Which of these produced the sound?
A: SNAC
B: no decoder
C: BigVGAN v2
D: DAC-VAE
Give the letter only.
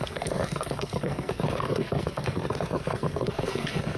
A